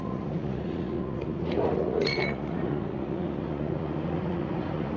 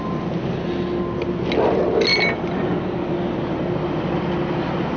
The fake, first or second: first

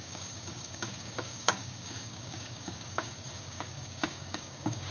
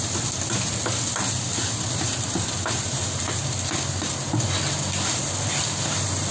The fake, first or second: first